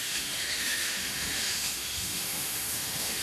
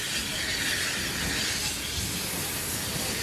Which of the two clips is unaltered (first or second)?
second